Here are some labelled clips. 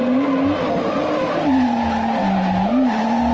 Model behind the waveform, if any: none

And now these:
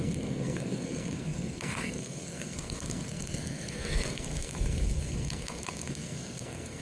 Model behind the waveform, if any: codec, SNAC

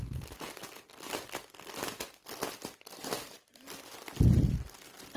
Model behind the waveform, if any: none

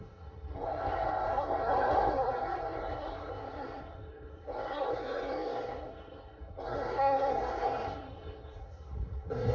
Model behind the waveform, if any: codec, SNAC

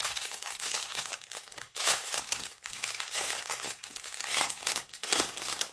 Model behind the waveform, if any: codec, SNAC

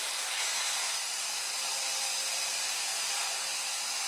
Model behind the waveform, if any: none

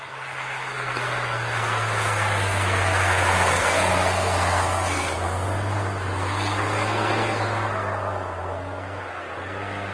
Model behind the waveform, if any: codec, SNAC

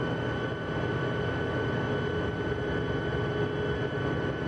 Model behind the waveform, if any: none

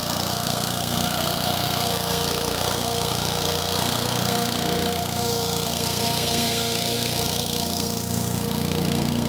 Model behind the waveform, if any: codec, SNAC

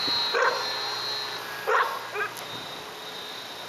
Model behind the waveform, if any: none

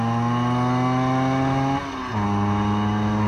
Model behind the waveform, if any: none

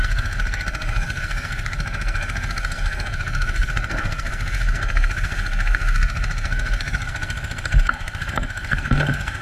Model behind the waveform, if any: codec, SNAC